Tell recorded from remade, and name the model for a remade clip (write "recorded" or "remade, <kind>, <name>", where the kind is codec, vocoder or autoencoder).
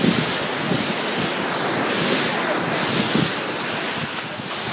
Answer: recorded